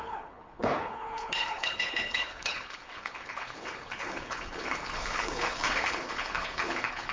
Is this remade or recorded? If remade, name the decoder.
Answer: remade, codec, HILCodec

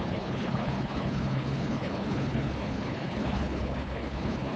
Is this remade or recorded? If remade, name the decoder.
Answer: remade, codec, HILCodec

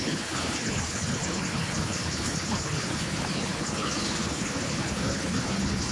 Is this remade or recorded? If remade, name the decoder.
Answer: remade, codec, HILCodec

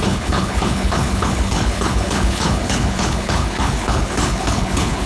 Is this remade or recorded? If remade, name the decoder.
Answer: remade, codec, HILCodec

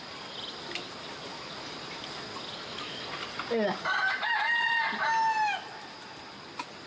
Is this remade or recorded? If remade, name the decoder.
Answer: recorded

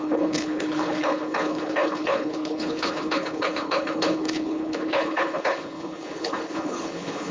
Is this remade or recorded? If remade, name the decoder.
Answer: remade, codec, HILCodec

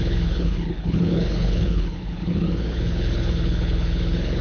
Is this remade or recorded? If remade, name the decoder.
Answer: remade, codec, HILCodec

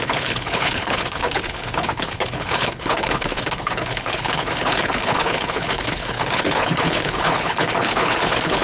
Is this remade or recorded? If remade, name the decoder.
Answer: remade, codec, HILCodec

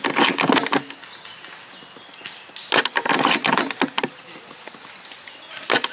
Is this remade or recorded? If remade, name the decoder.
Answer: recorded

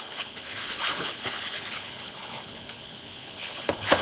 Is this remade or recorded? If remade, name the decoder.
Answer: remade, codec, HILCodec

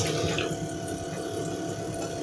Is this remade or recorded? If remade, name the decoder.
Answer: recorded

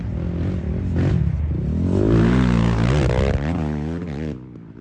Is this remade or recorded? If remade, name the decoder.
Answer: recorded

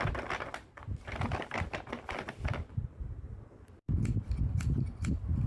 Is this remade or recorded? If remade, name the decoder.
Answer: recorded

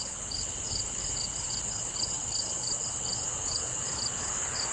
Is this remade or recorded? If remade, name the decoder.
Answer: remade, codec, HILCodec